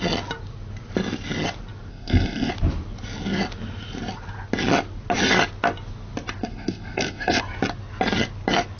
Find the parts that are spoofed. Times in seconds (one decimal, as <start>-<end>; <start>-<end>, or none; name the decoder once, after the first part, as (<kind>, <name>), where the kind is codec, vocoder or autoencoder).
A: 1.9-2.5 (codec, SNAC); 6.4-7.4